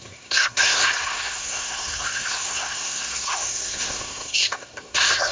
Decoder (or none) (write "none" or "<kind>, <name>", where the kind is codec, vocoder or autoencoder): codec, SNAC